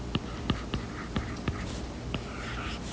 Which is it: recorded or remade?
recorded